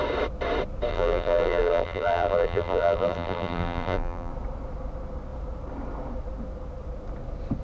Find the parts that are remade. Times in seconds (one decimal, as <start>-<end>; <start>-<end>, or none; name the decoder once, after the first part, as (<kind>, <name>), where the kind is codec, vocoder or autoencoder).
0.9-4.3 (vocoder, BigVGAN v2)